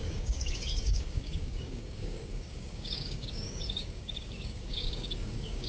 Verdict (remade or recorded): remade